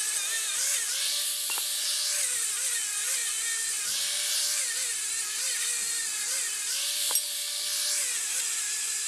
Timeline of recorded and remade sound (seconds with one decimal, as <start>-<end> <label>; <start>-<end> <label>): 0.0-9.1 recorded

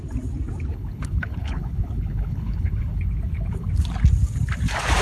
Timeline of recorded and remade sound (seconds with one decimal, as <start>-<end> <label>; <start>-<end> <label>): 0.0-0.7 recorded; 0.7-3.7 remade; 3.7-5.0 recorded

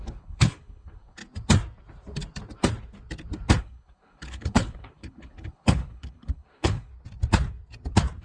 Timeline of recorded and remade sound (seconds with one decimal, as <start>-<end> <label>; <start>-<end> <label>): 0.0-1.2 remade; 1.2-3.6 recorded; 3.6-6.9 remade; 6.9-8.2 recorded

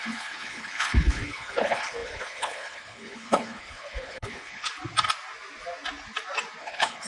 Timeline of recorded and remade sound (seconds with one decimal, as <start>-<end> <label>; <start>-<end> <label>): 0.0-4.7 remade; 4.7-6.6 recorded; 6.6-7.1 remade

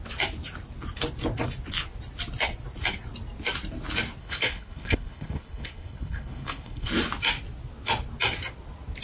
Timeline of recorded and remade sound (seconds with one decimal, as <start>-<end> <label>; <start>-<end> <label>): 0.0-4.2 recorded; 4.2-6.9 remade; 6.9-9.0 recorded